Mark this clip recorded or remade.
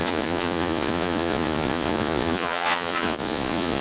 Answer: remade